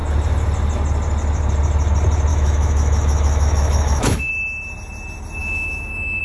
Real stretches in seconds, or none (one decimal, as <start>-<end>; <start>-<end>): 0.0-2.3; 4.3-5.4

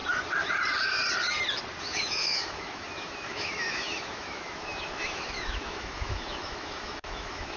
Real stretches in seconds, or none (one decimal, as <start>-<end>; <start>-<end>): 0.0-1.8